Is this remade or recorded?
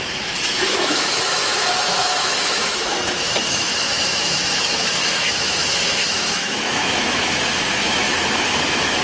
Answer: remade